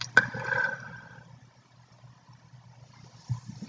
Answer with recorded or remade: recorded